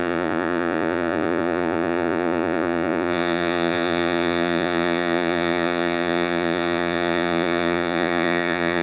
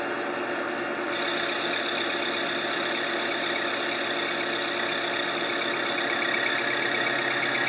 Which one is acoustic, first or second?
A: second